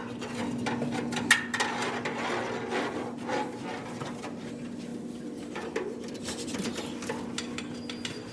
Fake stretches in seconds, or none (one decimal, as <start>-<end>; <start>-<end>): none